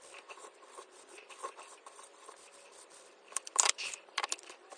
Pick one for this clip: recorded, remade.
remade